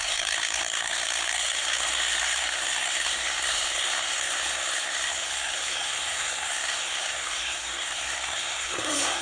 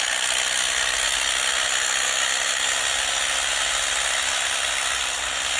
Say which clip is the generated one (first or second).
first